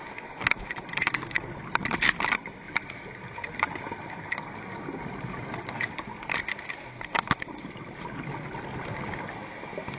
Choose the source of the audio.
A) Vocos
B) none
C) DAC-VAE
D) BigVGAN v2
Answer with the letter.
B